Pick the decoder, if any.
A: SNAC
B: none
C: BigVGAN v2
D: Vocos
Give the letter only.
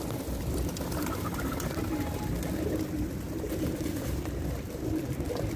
C